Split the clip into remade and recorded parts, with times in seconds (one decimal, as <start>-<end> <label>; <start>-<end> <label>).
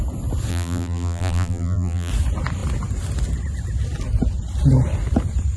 0.0-0.5 recorded; 0.5-2.1 remade; 2.1-5.6 recorded